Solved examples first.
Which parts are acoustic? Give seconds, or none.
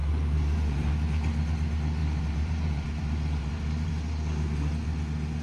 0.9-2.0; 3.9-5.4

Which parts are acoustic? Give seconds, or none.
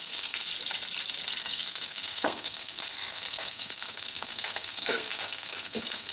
0.5-1.4